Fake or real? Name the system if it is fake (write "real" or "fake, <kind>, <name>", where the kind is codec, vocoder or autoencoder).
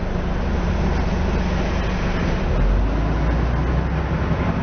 real